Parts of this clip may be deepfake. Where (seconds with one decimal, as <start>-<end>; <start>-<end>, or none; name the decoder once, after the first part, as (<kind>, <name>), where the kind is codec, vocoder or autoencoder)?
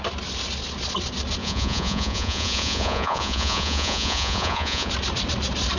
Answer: 1.4-4.9 (vocoder, Vocos)